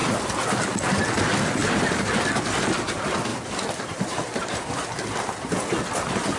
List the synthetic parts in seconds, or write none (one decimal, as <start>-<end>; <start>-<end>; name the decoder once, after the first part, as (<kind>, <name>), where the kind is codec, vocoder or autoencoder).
3.3-4.0 (vocoder, BigVGAN v2)